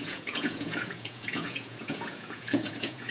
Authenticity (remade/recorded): remade